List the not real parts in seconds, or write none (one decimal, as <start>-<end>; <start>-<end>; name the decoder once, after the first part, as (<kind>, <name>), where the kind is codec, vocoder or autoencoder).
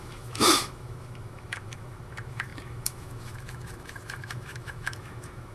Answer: 0.0-5.5 (autoencoder, DAC-VAE)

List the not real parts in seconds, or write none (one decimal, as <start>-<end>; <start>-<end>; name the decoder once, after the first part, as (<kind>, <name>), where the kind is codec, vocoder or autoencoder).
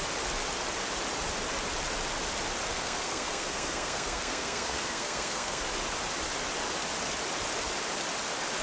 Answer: 2.7-5.6 (codec, SNAC)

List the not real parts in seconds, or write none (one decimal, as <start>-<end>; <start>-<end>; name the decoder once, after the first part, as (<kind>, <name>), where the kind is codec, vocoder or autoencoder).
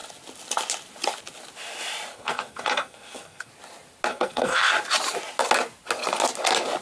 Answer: 2.1-3.5 (codec, SNAC); 4.1-4.7